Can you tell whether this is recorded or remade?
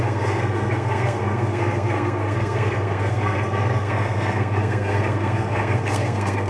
remade